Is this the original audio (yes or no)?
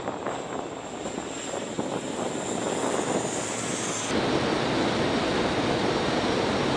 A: yes